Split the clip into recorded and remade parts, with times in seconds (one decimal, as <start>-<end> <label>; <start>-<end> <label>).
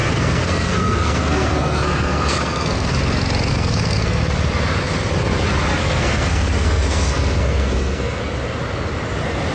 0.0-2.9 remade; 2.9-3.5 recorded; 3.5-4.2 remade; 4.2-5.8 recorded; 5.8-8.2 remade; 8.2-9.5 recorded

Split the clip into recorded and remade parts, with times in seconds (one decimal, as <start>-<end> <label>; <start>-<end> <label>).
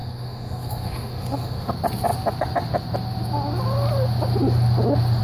0.0-1.7 remade; 1.7-5.2 recorded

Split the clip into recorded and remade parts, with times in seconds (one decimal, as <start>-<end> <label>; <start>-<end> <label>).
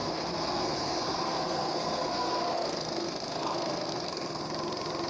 0.0-4.4 remade; 4.4-5.1 recorded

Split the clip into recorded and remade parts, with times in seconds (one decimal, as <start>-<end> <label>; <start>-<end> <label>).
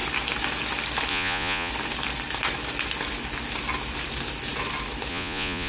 0.0-1.1 recorded; 1.1-1.7 remade; 1.7-5.1 recorded; 5.1-5.7 remade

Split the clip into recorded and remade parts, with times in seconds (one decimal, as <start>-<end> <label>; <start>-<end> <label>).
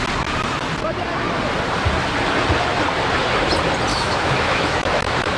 0.0-3.9 recorded; 3.9-5.4 remade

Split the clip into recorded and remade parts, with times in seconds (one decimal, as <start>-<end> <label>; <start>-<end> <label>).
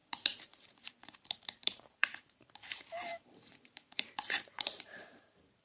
0.0-5.6 remade